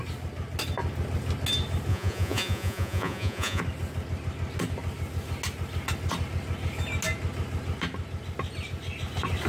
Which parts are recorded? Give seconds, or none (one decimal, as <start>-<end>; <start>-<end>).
0.0-1.9; 3.6-9.5